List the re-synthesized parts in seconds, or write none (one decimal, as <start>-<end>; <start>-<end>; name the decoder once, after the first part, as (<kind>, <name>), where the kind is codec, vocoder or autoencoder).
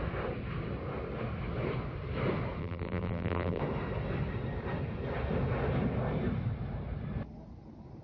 2.6-3.6 (vocoder, BigVGAN v2)